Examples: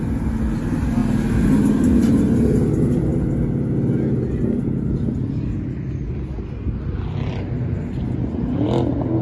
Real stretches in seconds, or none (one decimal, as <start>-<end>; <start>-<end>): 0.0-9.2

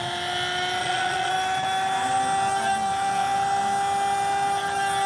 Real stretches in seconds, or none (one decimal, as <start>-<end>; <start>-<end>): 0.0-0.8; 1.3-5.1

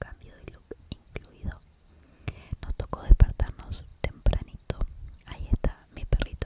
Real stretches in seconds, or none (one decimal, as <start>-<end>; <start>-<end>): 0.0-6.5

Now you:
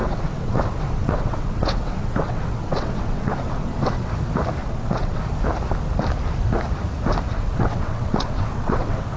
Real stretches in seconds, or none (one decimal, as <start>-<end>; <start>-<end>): 4.1-4.6; 5.2-7.3